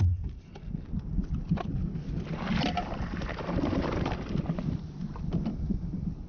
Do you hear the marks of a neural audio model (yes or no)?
no